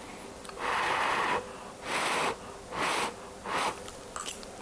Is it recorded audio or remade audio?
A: recorded